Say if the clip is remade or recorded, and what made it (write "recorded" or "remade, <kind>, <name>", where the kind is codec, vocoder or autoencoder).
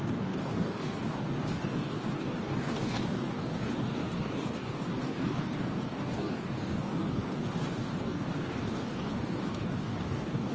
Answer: remade, codec, DAC